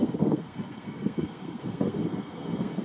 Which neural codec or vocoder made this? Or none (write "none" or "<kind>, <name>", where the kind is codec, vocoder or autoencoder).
codec, SNAC